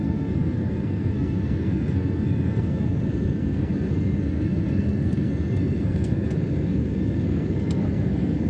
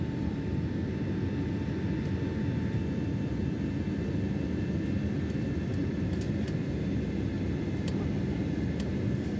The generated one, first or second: first